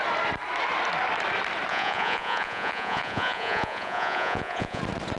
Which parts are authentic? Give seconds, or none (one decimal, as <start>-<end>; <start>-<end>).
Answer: 0.0-1.7; 4.8-5.2

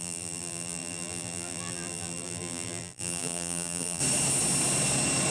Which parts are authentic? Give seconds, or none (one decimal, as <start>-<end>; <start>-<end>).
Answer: 4.0-5.3

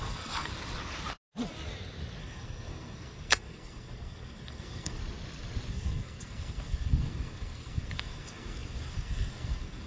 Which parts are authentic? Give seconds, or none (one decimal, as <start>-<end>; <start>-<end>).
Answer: 0.5-2.2; 5.0-5.7

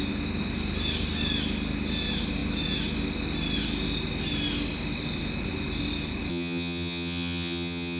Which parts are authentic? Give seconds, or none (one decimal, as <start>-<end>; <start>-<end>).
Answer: 0.0-6.3

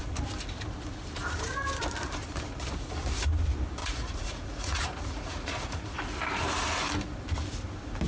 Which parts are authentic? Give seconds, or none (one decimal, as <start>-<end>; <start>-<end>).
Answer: 0.0-3.8; 6.0-8.1